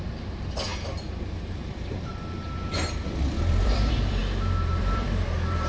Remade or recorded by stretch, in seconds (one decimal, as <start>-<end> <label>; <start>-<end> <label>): 0.0-2.1 remade; 2.1-2.8 recorded; 2.8-4.2 remade; 4.2-4.7 recorded; 4.7-5.7 remade